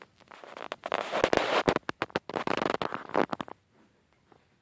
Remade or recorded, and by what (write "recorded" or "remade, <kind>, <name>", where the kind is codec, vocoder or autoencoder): recorded